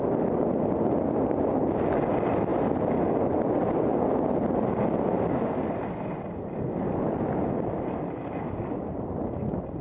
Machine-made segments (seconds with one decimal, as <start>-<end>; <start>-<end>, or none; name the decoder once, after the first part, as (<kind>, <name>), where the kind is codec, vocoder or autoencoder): none